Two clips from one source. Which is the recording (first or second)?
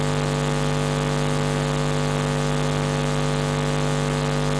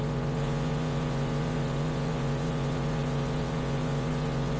first